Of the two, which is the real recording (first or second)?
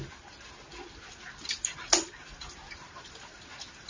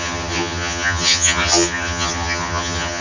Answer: first